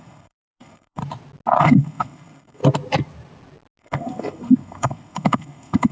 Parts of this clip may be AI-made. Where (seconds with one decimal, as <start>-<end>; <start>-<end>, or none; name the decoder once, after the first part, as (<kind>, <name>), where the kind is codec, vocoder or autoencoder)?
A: 0.0-1.0 (codec, SNAC); 1.6-2.6; 3.8-5.9

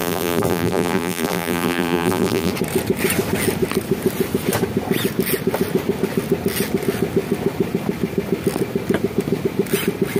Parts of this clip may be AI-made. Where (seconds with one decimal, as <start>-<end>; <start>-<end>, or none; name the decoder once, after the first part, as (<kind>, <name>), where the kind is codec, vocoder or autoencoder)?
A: 0.0-2.5 (vocoder, BigVGAN v2)

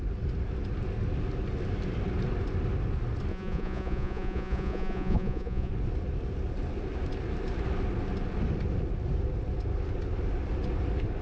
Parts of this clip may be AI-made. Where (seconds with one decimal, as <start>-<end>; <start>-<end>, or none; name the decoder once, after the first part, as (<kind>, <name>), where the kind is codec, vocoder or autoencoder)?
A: 3.3-5.7 (vocoder, Vocos)

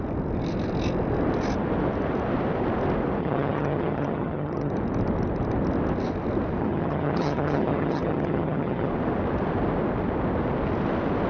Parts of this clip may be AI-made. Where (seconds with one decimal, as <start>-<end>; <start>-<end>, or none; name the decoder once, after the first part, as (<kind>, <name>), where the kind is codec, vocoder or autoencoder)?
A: 3.2-4.7 (vocoder, HiFi-GAN); 6.6-8.9